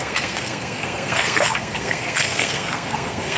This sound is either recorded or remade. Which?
remade